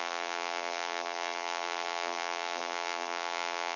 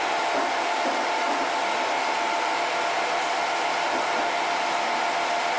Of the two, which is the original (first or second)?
second